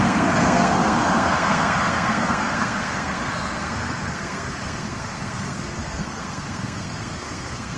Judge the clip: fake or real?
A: fake